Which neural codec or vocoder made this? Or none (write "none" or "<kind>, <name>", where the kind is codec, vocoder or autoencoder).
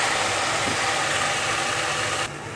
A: none